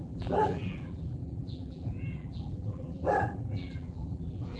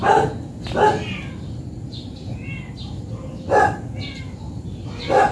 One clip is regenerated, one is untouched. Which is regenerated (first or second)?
first